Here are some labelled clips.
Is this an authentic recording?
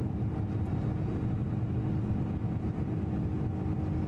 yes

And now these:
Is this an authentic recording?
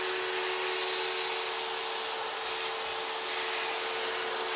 yes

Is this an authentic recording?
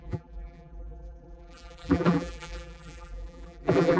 no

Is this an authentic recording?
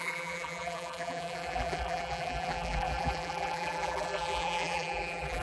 no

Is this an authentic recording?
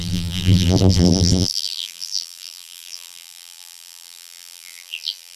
no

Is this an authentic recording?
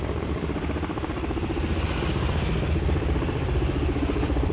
no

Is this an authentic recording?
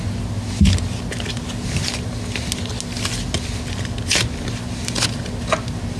yes